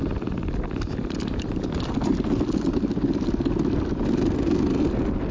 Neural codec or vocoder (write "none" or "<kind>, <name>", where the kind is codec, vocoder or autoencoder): none